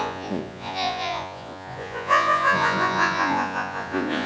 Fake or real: fake